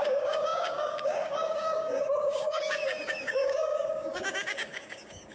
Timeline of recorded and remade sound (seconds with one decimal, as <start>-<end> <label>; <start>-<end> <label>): 0.0-5.3 remade